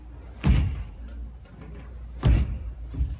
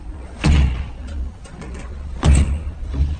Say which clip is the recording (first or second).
first